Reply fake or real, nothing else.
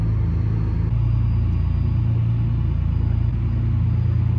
real